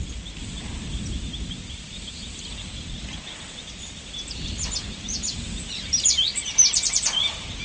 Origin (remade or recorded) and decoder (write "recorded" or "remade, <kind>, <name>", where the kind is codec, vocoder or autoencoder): remade, vocoder, BigVGAN v2